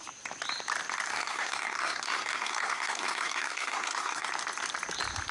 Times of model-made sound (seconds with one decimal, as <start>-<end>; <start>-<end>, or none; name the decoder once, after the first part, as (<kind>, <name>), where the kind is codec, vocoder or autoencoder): 1.1-4.3 (codec, SNAC)